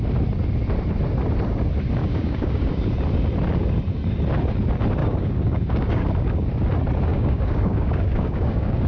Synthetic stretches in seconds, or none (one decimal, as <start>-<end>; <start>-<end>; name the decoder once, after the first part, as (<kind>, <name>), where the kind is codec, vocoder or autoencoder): 2.0-2.7 (codec, DAC); 5.0-6.5; 7.1-8.9